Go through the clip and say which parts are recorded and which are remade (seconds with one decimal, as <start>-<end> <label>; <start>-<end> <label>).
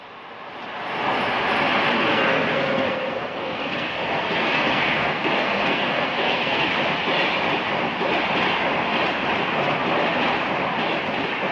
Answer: 0.0-2.1 recorded; 2.1-6.7 remade; 6.7-11.5 recorded